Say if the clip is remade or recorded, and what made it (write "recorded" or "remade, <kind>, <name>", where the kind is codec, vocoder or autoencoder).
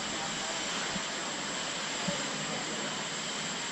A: recorded